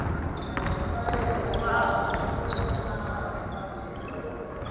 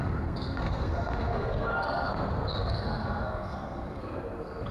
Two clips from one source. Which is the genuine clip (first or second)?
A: first